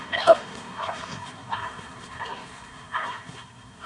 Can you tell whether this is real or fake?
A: fake